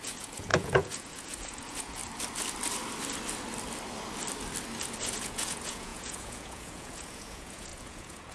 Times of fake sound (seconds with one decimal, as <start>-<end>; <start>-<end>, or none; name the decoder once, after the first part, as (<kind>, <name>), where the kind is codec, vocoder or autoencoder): 0.0-2.0 (vocoder, Vocos); 5.0-8.3